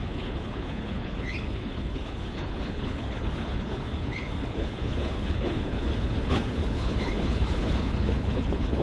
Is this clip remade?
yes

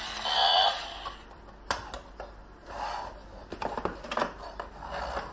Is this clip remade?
no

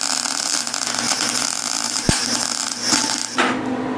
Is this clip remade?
no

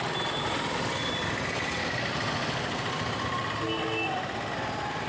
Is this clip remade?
no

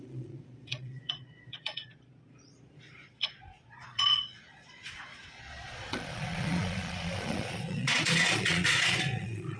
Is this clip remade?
yes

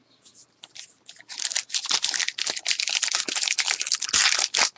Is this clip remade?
no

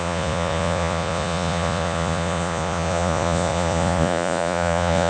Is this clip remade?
yes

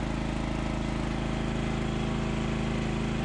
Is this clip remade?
no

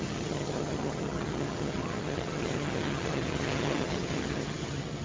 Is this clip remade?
yes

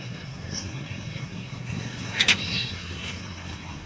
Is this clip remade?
yes